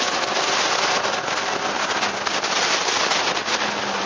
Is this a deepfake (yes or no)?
no